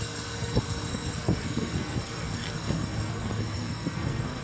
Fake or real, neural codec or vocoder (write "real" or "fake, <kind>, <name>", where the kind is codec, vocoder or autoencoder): fake, codec, SNAC